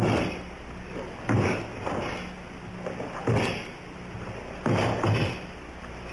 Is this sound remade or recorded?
recorded